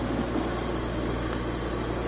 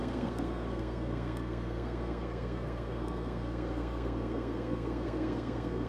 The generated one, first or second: second